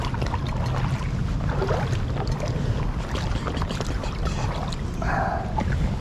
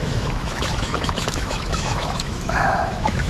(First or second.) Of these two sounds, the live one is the first